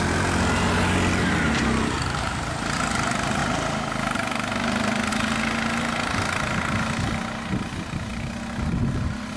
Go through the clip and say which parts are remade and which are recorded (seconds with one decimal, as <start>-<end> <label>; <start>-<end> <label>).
0.0-9.4 recorded